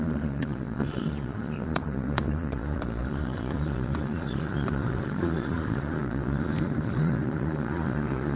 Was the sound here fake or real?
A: fake